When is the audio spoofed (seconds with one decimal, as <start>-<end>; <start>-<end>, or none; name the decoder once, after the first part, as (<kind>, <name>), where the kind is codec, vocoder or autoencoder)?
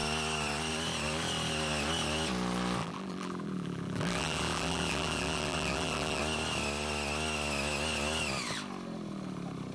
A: 2.8-6.2 (vocoder, BigVGAN v2)